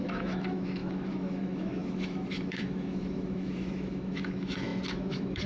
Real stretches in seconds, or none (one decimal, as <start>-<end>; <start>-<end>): none